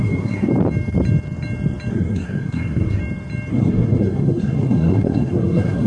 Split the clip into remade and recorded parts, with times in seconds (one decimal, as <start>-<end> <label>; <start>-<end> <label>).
0.0-0.5 remade; 0.5-1.9 recorded; 1.9-3.0 remade; 3.0-3.5 recorded; 3.5-5.9 remade